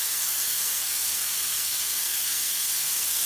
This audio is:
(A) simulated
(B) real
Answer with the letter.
A